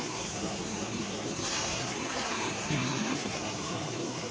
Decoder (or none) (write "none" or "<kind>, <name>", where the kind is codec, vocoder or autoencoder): codec, SNAC